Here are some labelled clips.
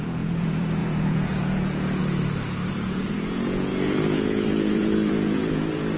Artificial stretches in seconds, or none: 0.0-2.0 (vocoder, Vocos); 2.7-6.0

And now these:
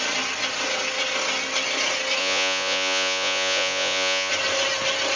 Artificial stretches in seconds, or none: 2.2-4.3 (vocoder, Vocos)

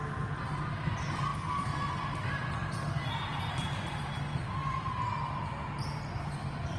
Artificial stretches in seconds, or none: none

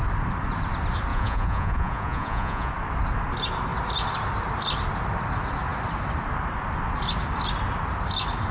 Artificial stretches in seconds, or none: 1.1-2.7 (vocoder, Vocos)

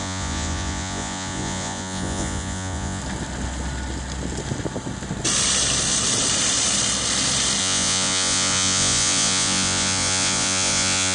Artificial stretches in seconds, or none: 0.0-3.0 (vocoder, Vocos); 7.6-11.1

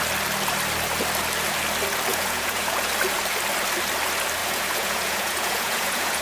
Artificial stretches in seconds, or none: 2.1-2.9 (vocoder, Vocos); 4.4-6.2

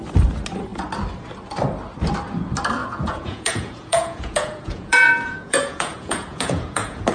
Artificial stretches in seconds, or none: 2.8-7.1 (vocoder, Vocos)

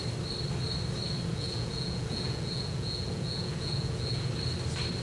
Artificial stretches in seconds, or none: 1.3-4.3 (vocoder, Vocos)